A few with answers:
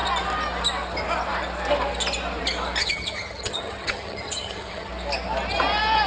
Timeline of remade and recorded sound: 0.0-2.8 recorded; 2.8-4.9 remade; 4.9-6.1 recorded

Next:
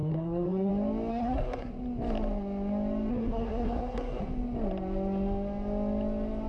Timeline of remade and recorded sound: 0.0-0.7 remade; 0.7-1.1 recorded; 1.1-1.7 remade; 1.7-3.1 recorded; 3.1-4.2 remade; 4.2-6.5 recorded

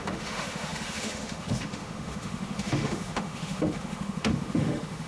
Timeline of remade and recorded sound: 0.0-5.1 remade